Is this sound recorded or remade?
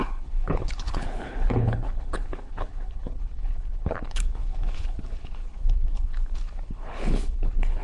remade